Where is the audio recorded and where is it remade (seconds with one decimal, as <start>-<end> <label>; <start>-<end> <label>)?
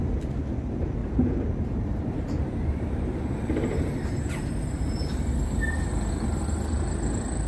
0.0-1.0 recorded; 1.0-5.0 remade; 5.0-7.5 recorded